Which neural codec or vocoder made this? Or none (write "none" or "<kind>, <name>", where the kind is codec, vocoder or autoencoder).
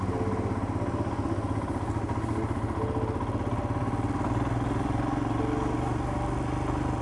none